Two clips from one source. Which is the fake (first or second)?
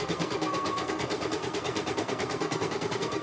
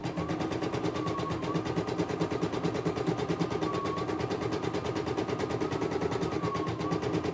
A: first